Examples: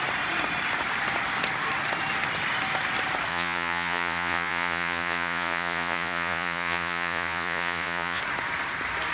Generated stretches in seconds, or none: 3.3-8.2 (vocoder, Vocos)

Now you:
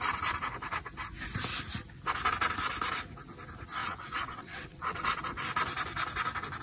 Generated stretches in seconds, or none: 3.8-5.2 (vocoder, WaveNeXt)

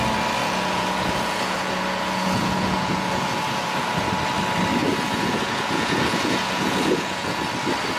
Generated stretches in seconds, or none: 0.4-4.1 (vocoder, Vocos); 4.8-7.4